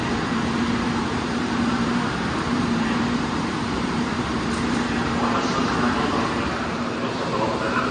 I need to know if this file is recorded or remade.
remade